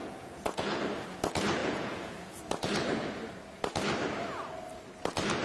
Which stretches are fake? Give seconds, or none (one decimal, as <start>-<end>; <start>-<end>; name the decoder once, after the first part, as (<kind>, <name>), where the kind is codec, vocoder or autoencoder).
0.0-0.8 (vocoder, Vocos); 1.6-2.4